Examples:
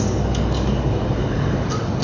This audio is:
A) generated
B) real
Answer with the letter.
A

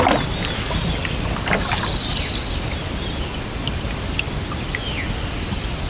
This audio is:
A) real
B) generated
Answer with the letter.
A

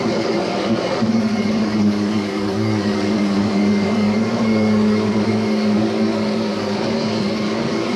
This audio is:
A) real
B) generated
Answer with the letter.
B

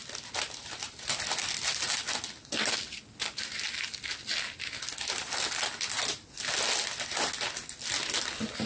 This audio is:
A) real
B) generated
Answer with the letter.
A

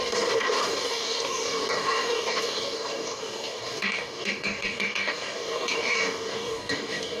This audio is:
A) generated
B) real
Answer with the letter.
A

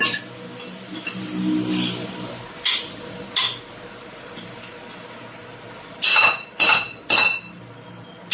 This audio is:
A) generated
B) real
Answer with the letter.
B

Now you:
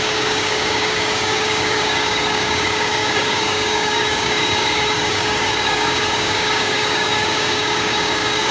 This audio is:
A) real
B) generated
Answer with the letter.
B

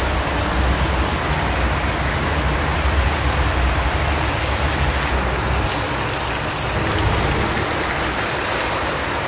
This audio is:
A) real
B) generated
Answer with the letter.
A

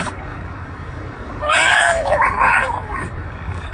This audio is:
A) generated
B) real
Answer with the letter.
A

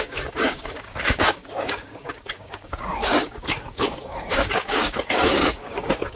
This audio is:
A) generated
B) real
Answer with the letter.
A